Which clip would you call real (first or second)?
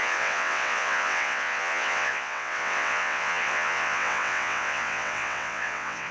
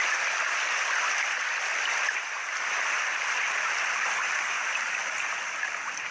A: second